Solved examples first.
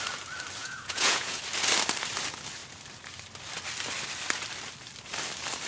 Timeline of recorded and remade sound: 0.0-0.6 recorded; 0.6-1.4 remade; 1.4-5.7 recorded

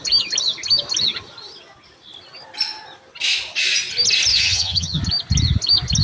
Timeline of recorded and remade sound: 0.0-4.3 recorded; 4.3-5.0 remade; 5.0-6.0 recorded

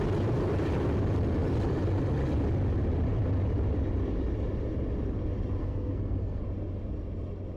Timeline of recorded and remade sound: 0.0-5.6 recorded; 5.6-6.4 remade; 6.4-7.6 recorded

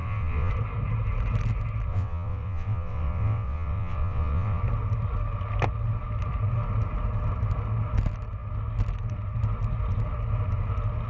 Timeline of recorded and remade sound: 0.0-0.5 remade; 0.5-1.9 recorded; 1.9-4.6 remade; 4.6-11.1 recorded

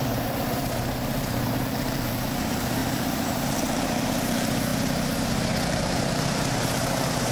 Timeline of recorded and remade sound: 0.0-4.7 remade; 4.7-5.7 recorded; 5.7-7.3 remade

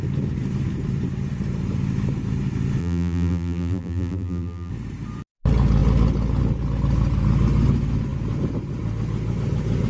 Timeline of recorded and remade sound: 0.0-2.8 recorded; 2.8-4.7 remade; 4.7-9.9 recorded

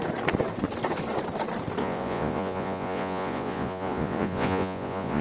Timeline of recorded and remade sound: 0.0-1.8 recorded; 1.8-5.2 remade

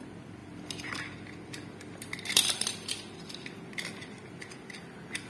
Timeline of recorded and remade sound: 0.0-0.4 recorded; 0.4-3.3 remade; 3.3-5.3 recorded